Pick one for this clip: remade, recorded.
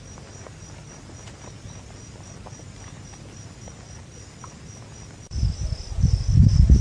recorded